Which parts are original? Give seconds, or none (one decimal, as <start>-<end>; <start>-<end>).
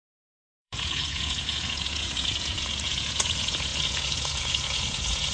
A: none